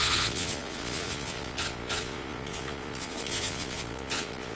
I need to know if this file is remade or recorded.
remade